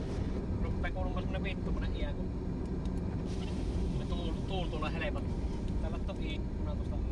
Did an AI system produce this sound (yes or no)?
no